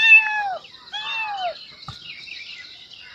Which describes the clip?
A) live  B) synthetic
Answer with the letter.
A